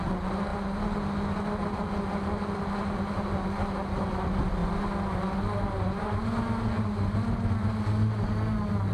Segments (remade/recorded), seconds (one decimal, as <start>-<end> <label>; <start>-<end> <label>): 0.0-8.9 recorded